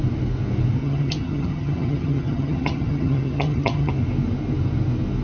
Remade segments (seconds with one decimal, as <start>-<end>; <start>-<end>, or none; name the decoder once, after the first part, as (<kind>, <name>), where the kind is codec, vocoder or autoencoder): 0.8-3.9 (vocoder, HiFi-GAN)